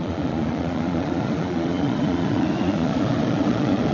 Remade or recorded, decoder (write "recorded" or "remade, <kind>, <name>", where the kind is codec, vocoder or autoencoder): remade, vocoder, Vocos